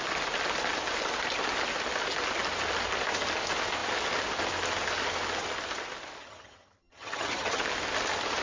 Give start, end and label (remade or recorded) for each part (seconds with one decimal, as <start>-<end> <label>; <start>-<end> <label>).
0.0-6.2 recorded; 6.2-7.6 remade; 7.6-8.4 recorded